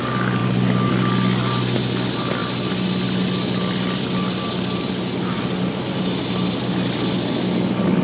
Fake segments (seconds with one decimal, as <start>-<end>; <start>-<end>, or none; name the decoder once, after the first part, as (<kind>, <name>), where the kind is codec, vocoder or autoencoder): none

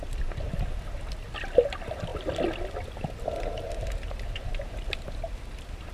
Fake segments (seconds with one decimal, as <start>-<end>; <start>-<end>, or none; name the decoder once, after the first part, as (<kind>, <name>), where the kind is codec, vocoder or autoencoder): none